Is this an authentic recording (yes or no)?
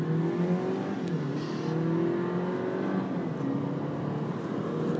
yes